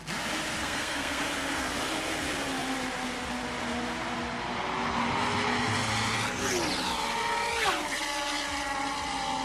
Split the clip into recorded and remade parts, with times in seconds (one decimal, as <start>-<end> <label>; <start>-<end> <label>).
0.0-0.6 recorded; 0.6-1.2 remade; 1.2-9.4 recorded